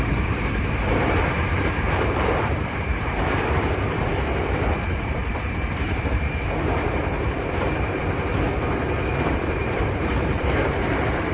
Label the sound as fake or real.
fake